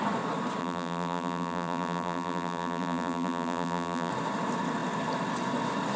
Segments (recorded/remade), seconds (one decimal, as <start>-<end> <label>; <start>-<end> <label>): 0.0-0.6 recorded; 0.6-4.1 remade; 4.1-6.0 recorded